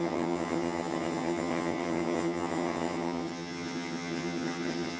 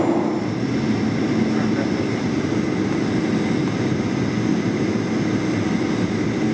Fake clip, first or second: first